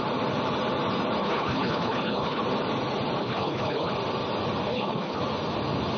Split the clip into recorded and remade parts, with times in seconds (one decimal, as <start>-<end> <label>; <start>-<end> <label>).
0.0-1.2 recorded; 1.2-2.4 remade; 2.4-3.2 recorded; 3.2-3.9 remade; 3.9-4.7 recorded; 4.7-5.2 remade; 5.2-6.0 recorded

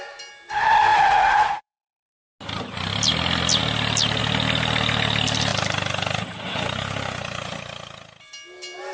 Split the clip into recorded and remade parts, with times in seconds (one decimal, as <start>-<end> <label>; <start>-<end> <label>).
0.0-0.9 recorded; 0.9-2.3 remade; 2.3-8.9 recorded

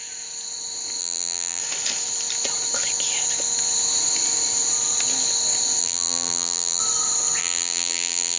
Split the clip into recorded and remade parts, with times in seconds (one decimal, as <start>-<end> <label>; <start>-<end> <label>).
0.0-1.0 recorded; 1.0-1.6 remade; 1.6-5.8 recorded; 5.8-6.8 remade; 6.8-7.4 recorded; 7.4-8.4 remade

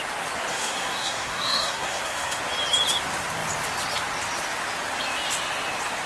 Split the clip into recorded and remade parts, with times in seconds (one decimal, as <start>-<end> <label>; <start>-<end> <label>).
0.0-0.5 recorded; 0.5-2.4 remade; 2.4-6.1 recorded

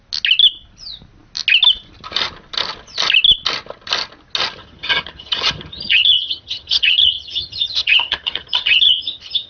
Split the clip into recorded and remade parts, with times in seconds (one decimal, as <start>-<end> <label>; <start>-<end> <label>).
0.0-4.6 recorded; 4.6-9.5 remade

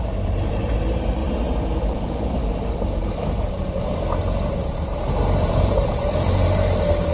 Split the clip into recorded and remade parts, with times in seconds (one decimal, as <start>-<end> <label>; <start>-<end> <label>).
0.0-1.2 remade; 1.2-1.8 recorded; 1.8-7.1 remade